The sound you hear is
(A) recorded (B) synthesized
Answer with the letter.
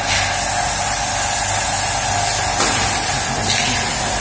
A